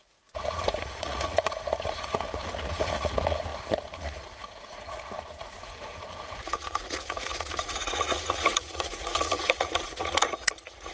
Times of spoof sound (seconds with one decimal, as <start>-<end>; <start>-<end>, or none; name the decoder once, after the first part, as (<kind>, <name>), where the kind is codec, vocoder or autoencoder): 0.0-10.9 (vocoder, Vocos)